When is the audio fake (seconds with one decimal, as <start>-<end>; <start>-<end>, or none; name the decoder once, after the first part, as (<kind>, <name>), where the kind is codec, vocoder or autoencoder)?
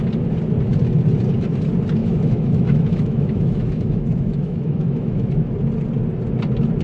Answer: 2.0-5.5 (autoencoder, DAC-VAE)